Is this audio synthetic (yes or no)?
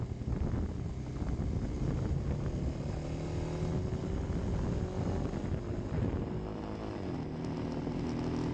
no